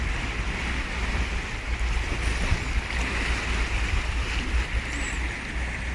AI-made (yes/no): no